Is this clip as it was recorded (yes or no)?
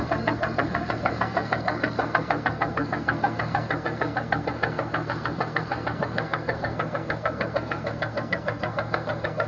no